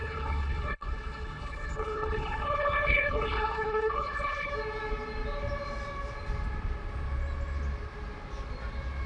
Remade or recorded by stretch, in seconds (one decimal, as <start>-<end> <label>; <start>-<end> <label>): 0.0-4.5 remade; 4.5-9.1 recorded